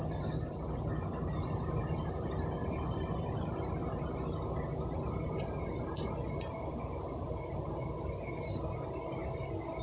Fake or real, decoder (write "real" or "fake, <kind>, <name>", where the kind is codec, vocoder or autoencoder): real